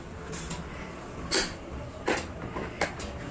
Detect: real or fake real